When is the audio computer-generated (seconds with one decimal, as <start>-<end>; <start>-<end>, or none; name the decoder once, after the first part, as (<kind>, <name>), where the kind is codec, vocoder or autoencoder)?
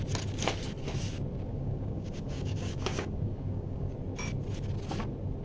1.5-3.9 (codec, DAC)